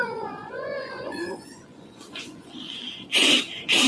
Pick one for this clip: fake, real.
fake